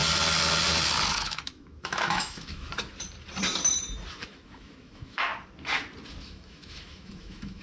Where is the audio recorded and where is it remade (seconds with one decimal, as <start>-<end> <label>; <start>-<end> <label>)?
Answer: 0.0-1.1 recorded; 1.1-2.7 remade; 2.7-4.3 recorded; 4.3-5.3 remade; 5.3-6.2 recorded; 6.2-7.6 remade